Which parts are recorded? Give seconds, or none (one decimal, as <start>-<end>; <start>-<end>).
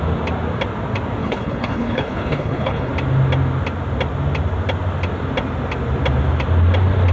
0.0-1.2; 2.9-7.1